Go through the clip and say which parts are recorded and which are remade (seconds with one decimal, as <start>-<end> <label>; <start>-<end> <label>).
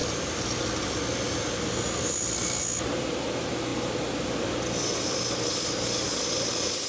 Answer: 0.0-0.8 remade; 0.8-6.9 recorded